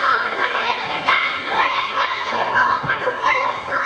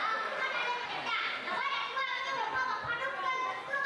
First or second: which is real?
second